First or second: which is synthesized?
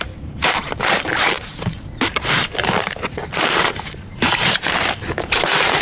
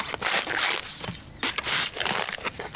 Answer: first